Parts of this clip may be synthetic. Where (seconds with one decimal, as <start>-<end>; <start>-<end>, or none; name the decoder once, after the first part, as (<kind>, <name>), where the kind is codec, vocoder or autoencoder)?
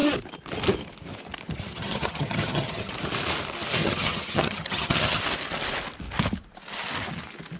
1.7-2.9 (vocoder, HiFi-GAN); 3.8-5.2